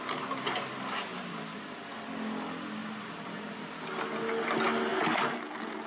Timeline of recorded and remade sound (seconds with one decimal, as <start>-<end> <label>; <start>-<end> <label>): 0.0-1.1 recorded; 1.1-1.6 remade; 1.6-2.8 recorded; 2.8-3.6 remade; 3.6-5.9 recorded